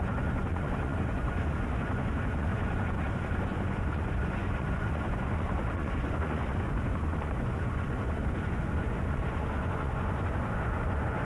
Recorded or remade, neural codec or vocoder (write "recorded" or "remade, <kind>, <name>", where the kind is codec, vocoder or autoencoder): remade, vocoder, Vocos